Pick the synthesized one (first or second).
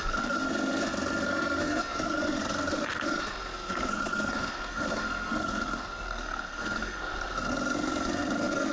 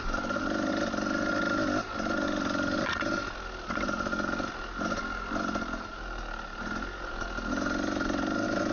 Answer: first